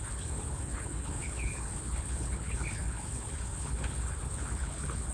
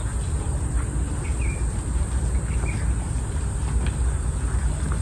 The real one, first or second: second